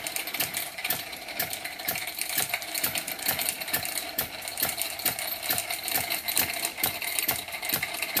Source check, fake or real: fake